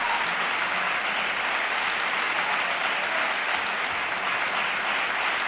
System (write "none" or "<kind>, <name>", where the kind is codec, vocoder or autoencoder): none